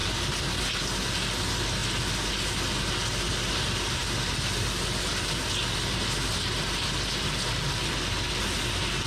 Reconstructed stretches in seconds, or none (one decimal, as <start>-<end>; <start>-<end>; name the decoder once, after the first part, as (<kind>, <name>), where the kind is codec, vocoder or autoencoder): none